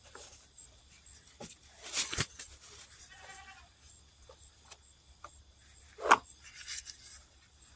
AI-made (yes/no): no